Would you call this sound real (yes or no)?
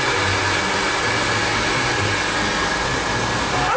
yes